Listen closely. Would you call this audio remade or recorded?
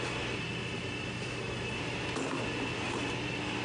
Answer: recorded